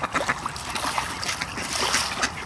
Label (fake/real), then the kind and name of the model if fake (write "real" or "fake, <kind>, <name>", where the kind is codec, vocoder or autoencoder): real